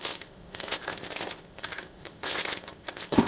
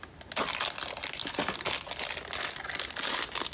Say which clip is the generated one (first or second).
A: first